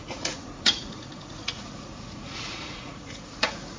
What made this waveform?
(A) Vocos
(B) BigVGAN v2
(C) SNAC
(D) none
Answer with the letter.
A